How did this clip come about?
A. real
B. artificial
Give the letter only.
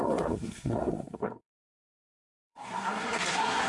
B